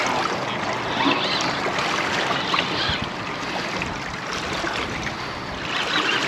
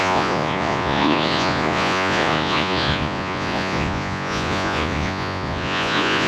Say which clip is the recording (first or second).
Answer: first